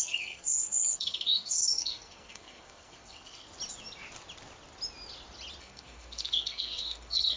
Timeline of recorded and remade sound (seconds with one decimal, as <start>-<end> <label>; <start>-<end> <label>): 0.0-3.5 remade; 3.5-5.6 recorded; 5.6-7.4 remade